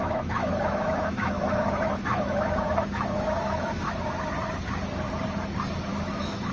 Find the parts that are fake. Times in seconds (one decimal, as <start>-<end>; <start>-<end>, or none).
0.0-3.9; 5.9-6.5